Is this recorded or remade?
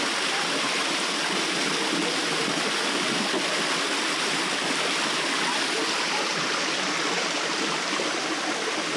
recorded